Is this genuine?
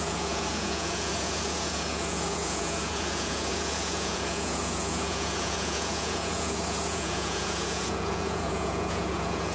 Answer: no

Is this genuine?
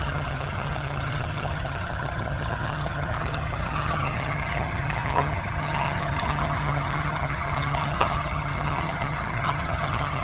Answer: no